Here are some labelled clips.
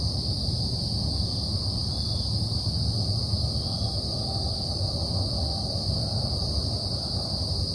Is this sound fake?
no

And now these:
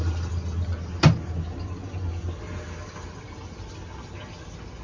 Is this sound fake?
no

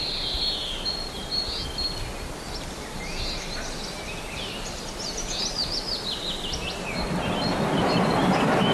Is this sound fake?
no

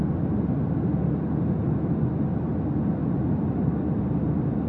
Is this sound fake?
yes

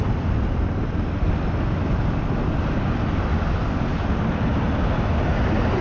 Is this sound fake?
no